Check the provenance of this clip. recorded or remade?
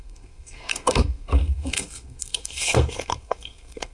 remade